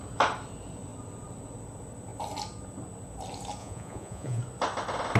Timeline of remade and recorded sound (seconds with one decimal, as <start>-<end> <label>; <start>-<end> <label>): 0.0-3.6 recorded; 3.6-4.4 remade; 4.4-5.2 recorded